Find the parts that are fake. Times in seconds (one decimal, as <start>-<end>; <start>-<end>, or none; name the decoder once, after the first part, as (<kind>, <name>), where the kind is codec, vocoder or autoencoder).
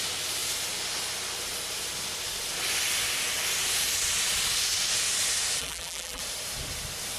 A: 5.6-6.2 (vocoder, BigVGAN v2)